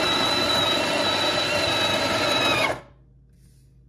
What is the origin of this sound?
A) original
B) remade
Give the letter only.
A